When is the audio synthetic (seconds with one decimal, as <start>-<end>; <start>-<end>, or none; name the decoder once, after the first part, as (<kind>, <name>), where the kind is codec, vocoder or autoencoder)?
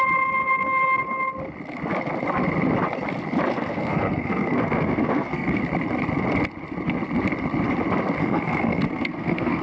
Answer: 3.5-5.6 (codec, SNAC); 8.2-9.6